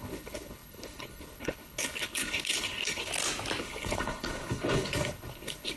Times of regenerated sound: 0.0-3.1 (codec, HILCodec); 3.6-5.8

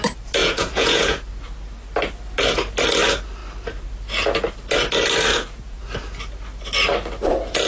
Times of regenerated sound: 0.4-1.2 (vocoder, Vocos); 5.3-5.8

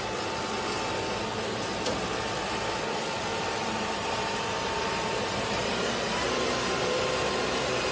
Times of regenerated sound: 3.3-7.1 (vocoder, BigVGAN v2)

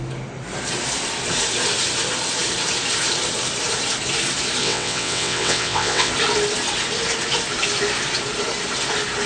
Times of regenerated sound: 4.6-6.1 (vocoder, WaveNeXt)

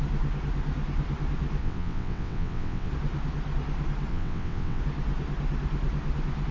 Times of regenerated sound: 1.6-2.9 (vocoder, WaveNeXt); 4.1-4.8

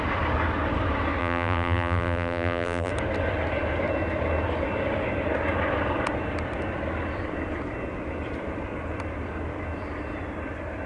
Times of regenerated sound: 1.2-2.9 (vocoder, BigVGAN v2)